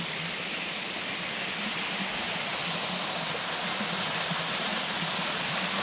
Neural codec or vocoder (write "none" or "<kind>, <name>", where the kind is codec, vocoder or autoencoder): none